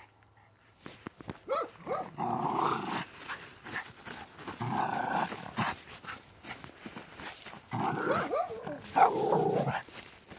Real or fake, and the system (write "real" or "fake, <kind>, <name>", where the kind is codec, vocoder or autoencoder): real